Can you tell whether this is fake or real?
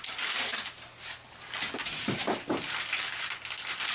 real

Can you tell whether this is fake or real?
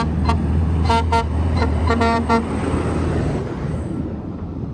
fake